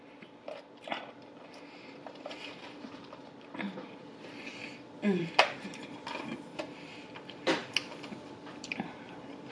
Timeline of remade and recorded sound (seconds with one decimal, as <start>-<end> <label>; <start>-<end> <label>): 0.0-4.5 remade; 4.5-5.4 recorded; 5.4-7.6 remade; 7.6-8.4 recorded; 8.4-9.5 remade